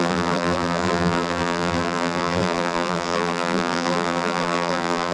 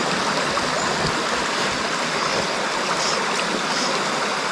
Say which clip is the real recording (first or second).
second